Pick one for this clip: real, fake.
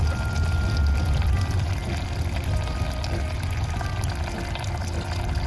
real